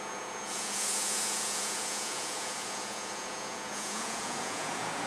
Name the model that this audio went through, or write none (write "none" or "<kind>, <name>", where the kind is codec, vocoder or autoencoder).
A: vocoder, Vocos